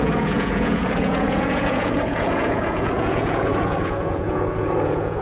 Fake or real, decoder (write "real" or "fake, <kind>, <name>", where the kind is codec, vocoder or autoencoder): fake, vocoder, Vocos